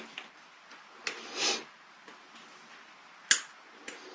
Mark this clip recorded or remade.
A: recorded